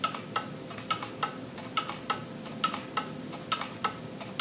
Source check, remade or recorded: recorded